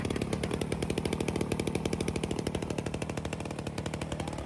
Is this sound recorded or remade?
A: recorded